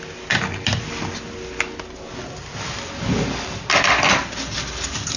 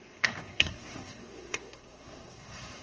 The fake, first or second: second